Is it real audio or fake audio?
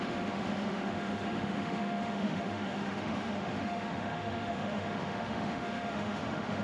fake